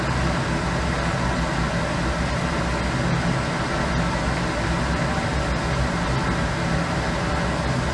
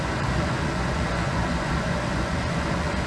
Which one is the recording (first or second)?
first